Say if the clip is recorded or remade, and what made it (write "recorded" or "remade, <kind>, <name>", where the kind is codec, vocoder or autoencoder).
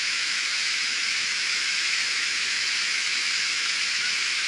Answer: remade, autoencoder, DAC-VAE